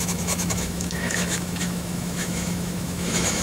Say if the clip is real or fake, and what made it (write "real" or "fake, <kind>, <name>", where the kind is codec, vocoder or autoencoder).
fake, autoencoder, DAC-VAE